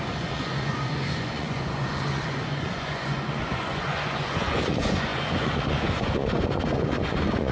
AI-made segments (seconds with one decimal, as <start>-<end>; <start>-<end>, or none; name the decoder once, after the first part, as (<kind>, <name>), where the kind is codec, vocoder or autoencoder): 0.0-7.5 (vocoder, Vocos)